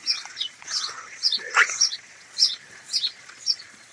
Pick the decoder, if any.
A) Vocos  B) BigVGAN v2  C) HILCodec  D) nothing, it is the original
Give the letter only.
A